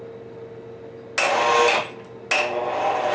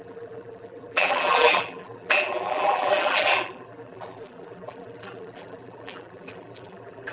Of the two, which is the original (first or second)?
first